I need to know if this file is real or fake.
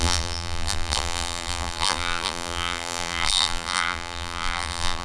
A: fake